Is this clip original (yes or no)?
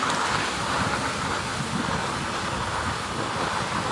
yes